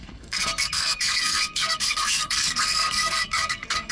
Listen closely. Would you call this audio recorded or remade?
remade